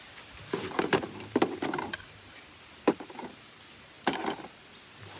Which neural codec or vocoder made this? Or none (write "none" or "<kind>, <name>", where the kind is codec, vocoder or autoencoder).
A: vocoder, BigVGAN v2